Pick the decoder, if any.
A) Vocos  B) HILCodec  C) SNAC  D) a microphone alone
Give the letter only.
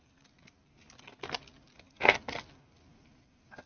D